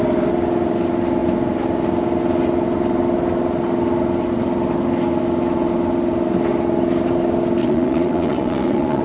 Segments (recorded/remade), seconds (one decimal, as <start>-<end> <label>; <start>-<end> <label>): 0.0-7.6 recorded; 7.6-9.0 remade